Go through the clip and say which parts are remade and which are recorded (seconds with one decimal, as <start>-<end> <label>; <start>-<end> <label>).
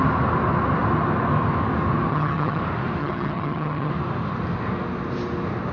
0.0-2.1 recorded; 2.1-2.6 remade; 2.6-3.0 recorded; 3.0-3.9 remade; 3.9-5.7 recorded